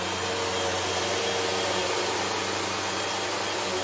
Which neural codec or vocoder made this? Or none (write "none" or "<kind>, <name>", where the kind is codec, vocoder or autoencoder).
none